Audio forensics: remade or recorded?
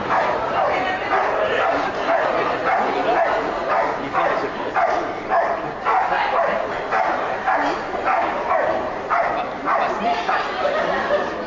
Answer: recorded